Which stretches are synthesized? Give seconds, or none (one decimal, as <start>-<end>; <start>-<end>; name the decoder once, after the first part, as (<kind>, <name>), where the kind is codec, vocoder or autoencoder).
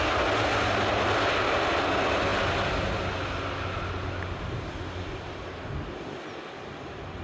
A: none